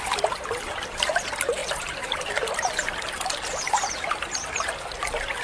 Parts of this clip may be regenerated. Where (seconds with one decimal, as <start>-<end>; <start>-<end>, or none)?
1.6-2.3; 2.8-4.2

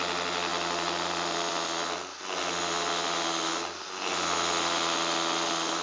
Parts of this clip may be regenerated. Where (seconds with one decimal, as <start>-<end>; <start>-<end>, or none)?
none

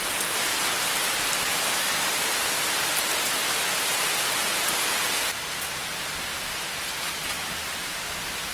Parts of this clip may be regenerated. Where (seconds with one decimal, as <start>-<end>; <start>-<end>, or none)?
1.5-2.2